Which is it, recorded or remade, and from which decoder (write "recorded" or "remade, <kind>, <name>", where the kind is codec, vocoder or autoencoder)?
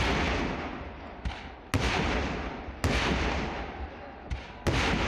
recorded